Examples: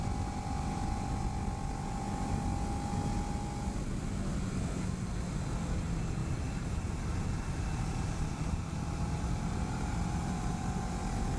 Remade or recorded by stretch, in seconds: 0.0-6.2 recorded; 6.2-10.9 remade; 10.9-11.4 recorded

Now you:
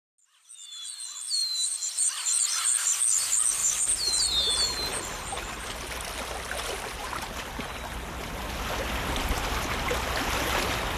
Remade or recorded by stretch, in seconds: 0.0-1.4 recorded; 1.4-2.4 remade; 2.4-3.6 recorded; 3.6-4.1 remade; 4.1-11.0 recorded

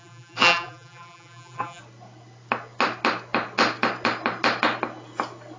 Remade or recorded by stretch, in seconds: 0.0-1.8 remade; 1.8-5.6 recorded

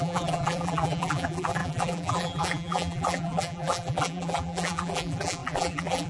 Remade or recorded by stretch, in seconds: 0.0-6.1 remade

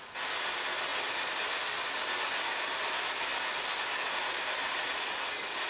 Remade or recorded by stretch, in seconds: 0.0-5.7 recorded

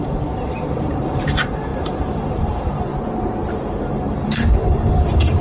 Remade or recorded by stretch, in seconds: 0.0-2.9 remade; 2.9-3.5 recorded; 3.5-5.4 remade

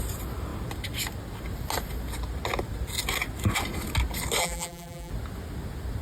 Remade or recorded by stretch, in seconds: 0.0-4.4 recorded; 4.4-5.1 remade; 5.1-6.0 recorded

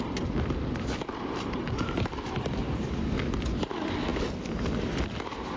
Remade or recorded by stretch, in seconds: 0.0-1.1 recorded; 1.1-3.0 remade; 3.0-5.6 recorded